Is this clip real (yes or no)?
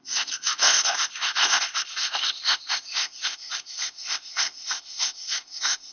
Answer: no